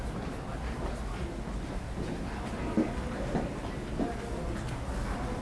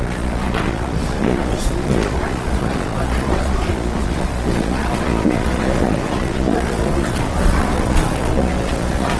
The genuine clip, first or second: first